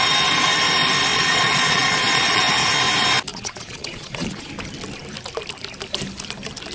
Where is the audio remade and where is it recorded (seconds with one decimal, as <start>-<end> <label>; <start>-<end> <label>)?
0.0-1.1 recorded; 1.1-2.4 remade; 2.4-3.3 recorded; 3.3-4.5 remade; 4.5-6.7 recorded